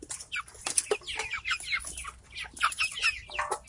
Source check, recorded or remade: recorded